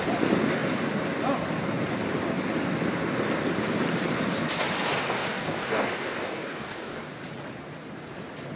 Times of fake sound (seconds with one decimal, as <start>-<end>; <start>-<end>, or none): 5.3-7.0